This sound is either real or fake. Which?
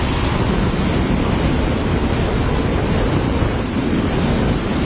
real